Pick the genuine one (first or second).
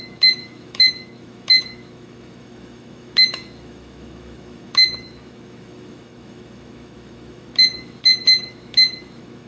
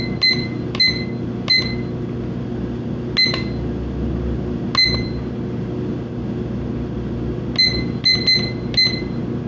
second